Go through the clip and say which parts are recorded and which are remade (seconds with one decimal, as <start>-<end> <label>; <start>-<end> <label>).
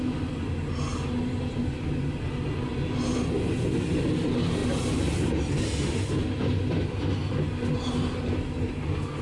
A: 0.0-9.2 recorded